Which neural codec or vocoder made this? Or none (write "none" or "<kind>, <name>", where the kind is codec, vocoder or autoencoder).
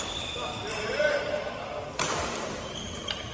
none